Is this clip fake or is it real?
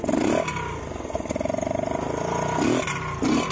real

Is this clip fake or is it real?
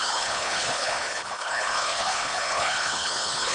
fake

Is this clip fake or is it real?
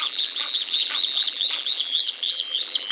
fake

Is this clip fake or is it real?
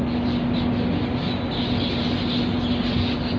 real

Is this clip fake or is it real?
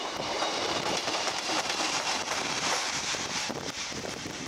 fake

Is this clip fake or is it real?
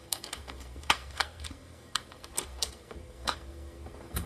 fake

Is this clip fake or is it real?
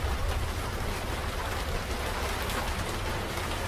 real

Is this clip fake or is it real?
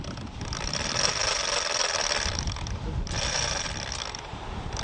fake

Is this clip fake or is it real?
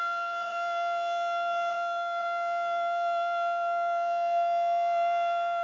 fake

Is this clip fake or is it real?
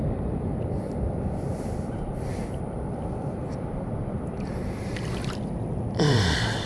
fake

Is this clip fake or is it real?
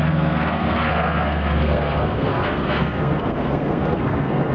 fake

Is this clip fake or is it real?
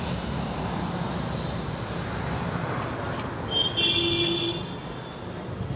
real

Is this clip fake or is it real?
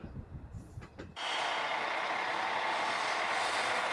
real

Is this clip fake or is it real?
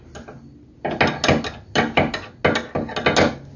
real